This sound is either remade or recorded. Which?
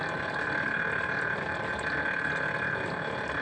recorded